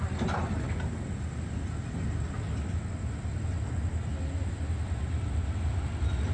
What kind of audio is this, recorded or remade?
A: recorded